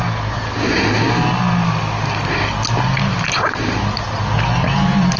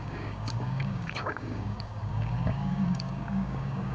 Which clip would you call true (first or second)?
first